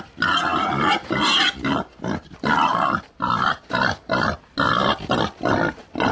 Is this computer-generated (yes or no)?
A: no